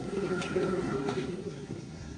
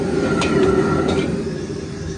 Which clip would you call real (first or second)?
second